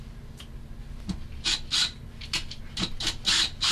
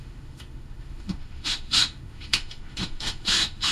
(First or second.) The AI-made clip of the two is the second